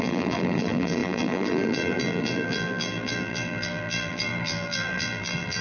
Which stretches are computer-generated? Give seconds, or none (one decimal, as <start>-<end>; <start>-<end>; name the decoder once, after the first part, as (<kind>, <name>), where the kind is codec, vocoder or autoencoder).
0.0-5.6 (vocoder, BigVGAN v2)